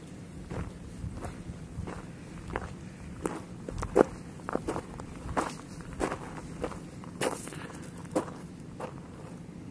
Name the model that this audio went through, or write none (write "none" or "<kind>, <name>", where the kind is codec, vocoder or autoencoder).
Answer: vocoder, BigVGAN v2